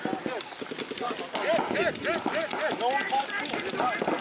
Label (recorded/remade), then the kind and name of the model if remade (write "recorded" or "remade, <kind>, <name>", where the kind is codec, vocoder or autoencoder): recorded